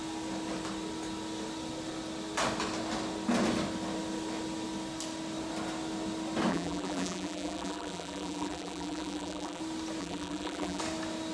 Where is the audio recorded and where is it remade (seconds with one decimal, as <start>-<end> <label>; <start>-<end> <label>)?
0.0-6.5 recorded; 6.5-9.6 remade; 9.6-10.0 recorded; 10.0-10.8 remade; 10.8-11.3 recorded